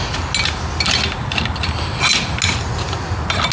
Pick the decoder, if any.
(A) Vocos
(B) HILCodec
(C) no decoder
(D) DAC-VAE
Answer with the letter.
C